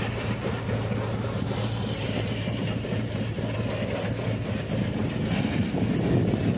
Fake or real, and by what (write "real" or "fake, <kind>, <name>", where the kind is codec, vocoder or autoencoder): fake, vocoder, BigVGAN v2